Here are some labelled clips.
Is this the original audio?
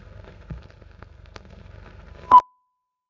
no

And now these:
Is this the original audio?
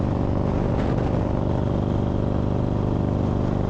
yes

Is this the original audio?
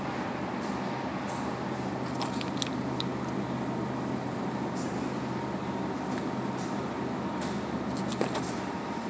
yes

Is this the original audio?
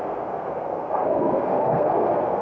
no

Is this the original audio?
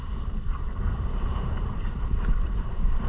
no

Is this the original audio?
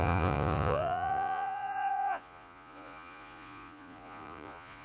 no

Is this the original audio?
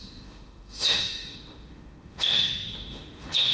no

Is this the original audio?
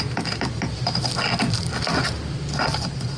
yes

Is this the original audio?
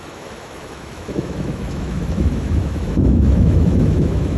no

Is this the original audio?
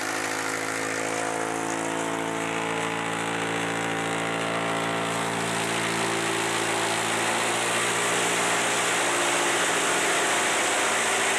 yes